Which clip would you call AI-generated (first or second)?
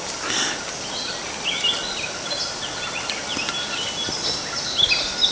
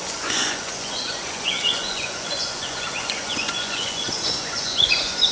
second